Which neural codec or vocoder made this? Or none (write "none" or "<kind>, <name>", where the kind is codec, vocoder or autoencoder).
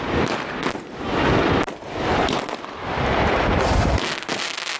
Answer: none